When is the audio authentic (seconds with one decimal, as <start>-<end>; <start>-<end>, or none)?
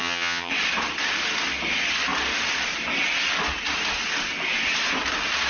0.5-5.5